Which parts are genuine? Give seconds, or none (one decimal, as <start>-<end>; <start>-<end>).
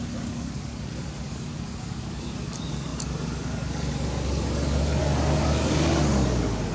none